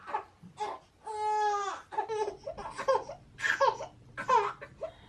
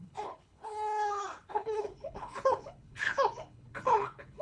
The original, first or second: first